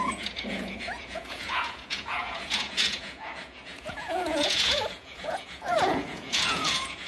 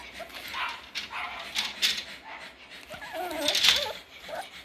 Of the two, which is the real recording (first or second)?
second